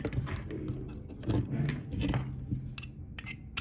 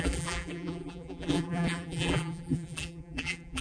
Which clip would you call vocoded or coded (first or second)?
second